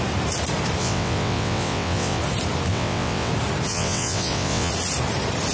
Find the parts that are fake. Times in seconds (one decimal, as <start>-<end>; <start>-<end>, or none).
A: 0.8-2.2; 2.7-3.3; 3.7-4.7